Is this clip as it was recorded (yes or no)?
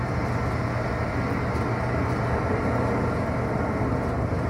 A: yes